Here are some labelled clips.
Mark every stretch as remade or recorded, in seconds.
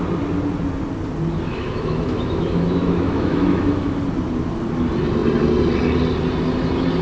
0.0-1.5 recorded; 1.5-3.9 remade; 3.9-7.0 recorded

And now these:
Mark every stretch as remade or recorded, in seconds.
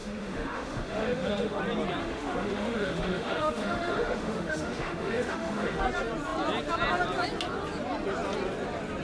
0.0-1.6 remade; 1.6-2.0 recorded; 2.0-5.8 remade; 5.8-9.0 recorded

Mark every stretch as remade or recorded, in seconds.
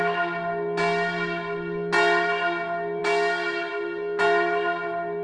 0.0-5.2 recorded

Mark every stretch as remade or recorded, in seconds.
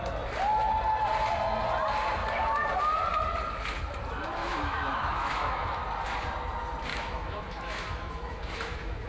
0.0-4.4 recorded; 4.4-5.8 remade; 5.8-6.9 recorded; 6.9-9.1 remade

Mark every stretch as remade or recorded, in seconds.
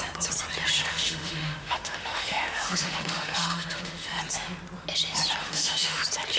0.0-0.8 recorded; 0.8-4.2 remade; 4.2-5.4 recorded; 5.4-6.0 remade; 6.0-6.4 recorded